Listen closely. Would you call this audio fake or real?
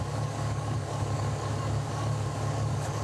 fake